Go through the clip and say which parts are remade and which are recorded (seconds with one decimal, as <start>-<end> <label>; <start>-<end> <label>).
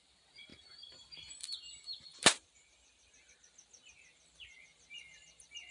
0.0-5.7 recorded